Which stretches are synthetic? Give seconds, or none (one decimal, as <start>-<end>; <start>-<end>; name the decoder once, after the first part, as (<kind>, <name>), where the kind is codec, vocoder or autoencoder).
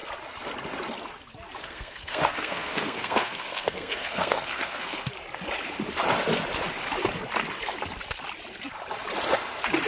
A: 1.6-5.1 (codec, SNAC)